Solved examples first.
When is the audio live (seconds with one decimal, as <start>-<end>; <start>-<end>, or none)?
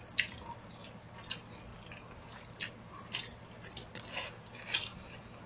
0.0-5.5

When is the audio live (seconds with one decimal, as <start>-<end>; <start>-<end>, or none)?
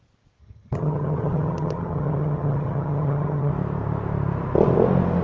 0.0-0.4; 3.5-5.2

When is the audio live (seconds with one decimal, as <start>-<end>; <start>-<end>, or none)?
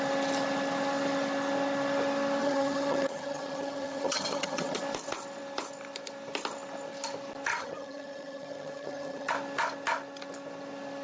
0.0-2.4; 4.8-7.5; 9.3-11.0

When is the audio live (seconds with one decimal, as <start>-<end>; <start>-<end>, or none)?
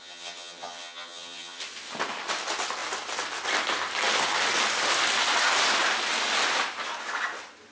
1.6-7.7